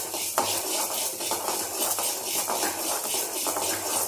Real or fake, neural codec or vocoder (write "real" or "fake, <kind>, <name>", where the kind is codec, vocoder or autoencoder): real